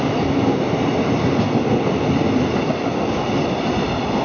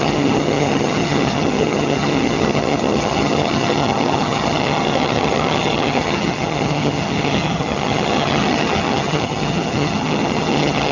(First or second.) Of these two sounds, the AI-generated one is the second